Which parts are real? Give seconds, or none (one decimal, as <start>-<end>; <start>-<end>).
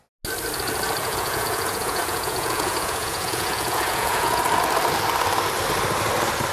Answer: 0.0-1.0; 4.4-6.5